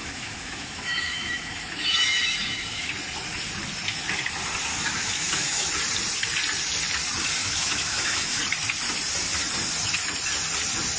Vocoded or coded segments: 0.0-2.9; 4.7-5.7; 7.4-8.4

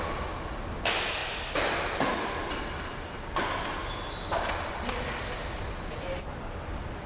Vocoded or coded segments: none

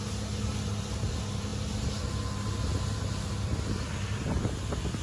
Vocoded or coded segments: none

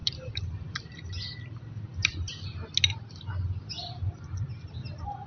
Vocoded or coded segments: 0.0-1.9

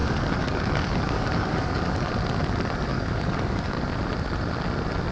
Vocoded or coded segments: 0.0-2.1; 2.9-3.8